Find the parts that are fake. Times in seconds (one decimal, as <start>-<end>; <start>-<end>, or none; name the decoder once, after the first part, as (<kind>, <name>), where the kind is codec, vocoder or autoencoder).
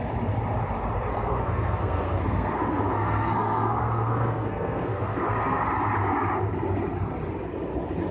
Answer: 1.1-5.7 (codec, SNAC)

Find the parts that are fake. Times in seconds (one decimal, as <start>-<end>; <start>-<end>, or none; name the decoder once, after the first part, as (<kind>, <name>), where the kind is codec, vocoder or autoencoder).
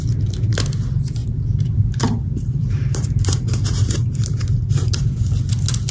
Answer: 1.2-4.7 (vocoder, BigVGAN v2)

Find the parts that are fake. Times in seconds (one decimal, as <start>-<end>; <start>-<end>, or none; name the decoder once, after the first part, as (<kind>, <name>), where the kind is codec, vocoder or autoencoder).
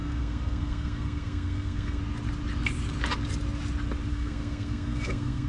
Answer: 0.0-2.0 (codec, SNAC); 4.1-5.5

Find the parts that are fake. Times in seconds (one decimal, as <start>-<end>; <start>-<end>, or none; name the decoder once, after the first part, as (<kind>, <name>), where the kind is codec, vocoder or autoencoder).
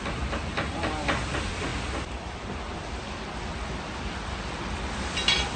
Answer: none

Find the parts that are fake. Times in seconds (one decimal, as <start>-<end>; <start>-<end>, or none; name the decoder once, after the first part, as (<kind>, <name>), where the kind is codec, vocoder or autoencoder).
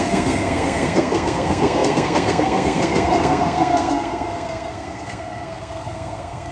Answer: 0.0-6.5 (codec, SNAC)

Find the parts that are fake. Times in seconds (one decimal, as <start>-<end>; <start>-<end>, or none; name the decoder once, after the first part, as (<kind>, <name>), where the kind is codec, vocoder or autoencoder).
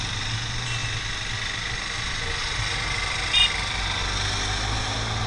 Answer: none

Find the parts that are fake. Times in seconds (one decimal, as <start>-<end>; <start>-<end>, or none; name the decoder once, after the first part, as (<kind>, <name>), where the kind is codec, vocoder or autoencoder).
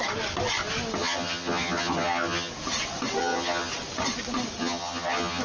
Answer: 1.0-2.5 (vocoder, HiFi-GAN); 3.2-3.7; 4.6-5.4